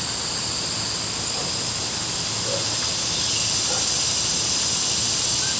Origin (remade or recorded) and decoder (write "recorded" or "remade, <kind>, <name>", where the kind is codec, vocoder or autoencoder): recorded